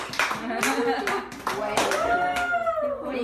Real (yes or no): yes